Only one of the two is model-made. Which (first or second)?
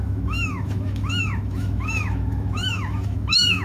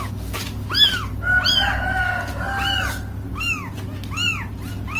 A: first